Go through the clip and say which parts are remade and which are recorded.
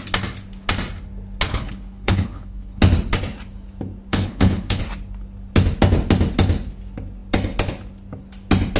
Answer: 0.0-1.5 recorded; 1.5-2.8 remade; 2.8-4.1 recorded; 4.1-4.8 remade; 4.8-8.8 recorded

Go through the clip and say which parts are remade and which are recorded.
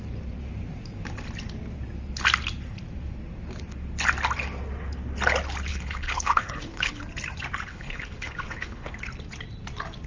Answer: 0.0-5.7 recorded; 5.7-7.0 remade; 7.0-7.7 recorded; 7.7-8.9 remade; 8.9-10.1 recorded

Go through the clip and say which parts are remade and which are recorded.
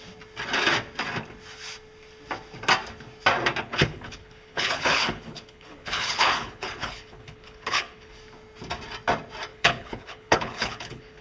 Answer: 0.0-3.6 recorded; 3.6-8.2 remade; 8.2-9.5 recorded; 9.5-11.2 remade